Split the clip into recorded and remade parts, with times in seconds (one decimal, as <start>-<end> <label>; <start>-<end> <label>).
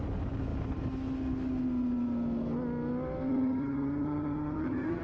0.0-3.3 recorded; 3.3-5.0 remade